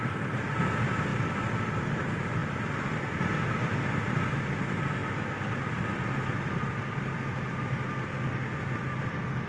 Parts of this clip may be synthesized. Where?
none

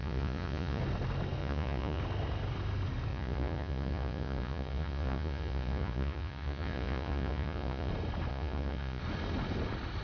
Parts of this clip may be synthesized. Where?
0.0-0.8 (vocoder, Vocos); 1.4-2.0; 3.1-7.9; 8.3-9.0